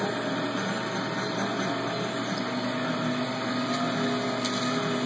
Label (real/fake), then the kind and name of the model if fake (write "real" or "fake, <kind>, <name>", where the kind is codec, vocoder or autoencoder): real